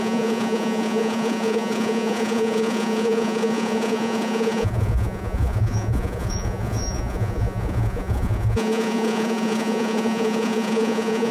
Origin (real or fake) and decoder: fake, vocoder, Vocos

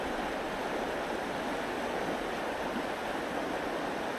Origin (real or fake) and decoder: real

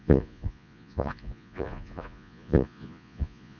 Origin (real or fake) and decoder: fake, vocoder, Vocos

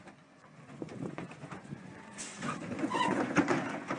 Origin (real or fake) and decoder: fake, vocoder, Vocos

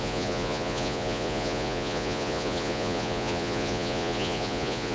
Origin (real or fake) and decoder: fake, vocoder, Vocos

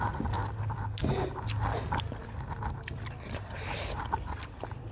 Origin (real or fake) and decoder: real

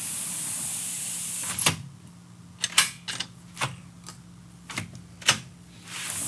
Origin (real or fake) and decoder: real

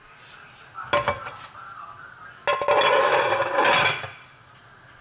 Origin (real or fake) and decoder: real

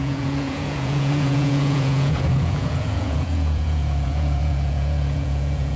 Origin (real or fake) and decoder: fake, vocoder, Vocos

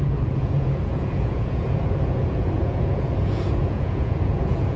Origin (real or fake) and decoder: fake, vocoder, Vocos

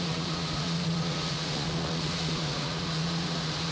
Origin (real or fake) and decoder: fake, vocoder, Vocos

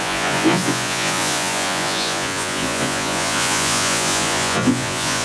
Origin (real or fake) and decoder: fake, vocoder, Vocos